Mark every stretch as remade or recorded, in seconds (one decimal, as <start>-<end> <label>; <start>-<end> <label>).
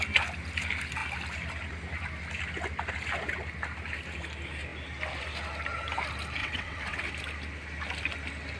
0.0-6.4 recorded; 6.4-7.1 remade; 7.1-8.6 recorded